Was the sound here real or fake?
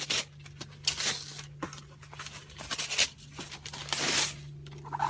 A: real